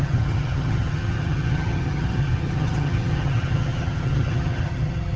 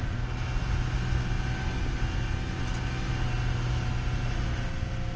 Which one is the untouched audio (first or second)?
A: second